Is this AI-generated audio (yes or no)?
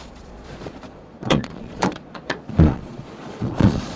yes